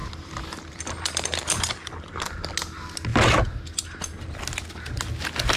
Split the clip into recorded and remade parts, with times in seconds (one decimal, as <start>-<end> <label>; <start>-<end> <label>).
0.0-2.1 remade; 2.1-5.6 recorded